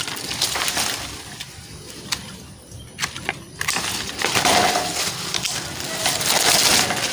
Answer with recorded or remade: recorded